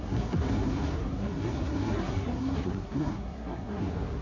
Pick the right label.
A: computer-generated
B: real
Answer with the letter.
A